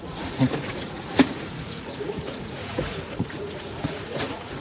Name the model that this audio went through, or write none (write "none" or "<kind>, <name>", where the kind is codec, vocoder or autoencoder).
vocoder, Vocos